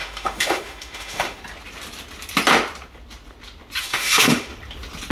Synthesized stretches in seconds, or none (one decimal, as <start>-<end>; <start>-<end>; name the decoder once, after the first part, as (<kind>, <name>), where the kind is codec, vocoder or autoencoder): 0.0-1.4 (autoencoder, DAC-VAE); 3.8-4.5

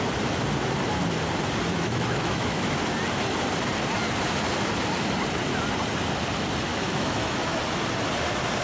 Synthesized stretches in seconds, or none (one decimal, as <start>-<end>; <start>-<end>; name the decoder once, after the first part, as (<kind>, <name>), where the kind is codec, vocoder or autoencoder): 1.7-2.6 (autoencoder, DAC-VAE); 6.7-7.6

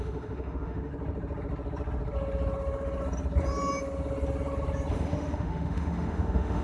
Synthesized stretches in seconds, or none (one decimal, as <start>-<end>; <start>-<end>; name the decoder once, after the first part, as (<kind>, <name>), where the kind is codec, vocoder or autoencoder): 0.0-0.9 (autoencoder, DAC-VAE); 4.9-6.6

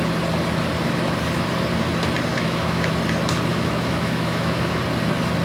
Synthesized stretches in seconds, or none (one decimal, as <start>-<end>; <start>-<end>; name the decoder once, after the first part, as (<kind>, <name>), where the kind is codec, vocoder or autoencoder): 2.3-2.9 (autoencoder, DAC-VAE); 3.5-4.8

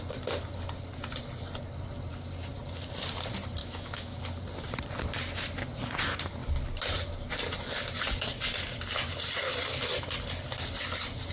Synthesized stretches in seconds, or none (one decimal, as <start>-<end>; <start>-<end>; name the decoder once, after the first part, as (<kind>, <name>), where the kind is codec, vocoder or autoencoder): 3.6-4.2 (autoencoder, DAC-VAE)